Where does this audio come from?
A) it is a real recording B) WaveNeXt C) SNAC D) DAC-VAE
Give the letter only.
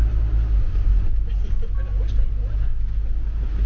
A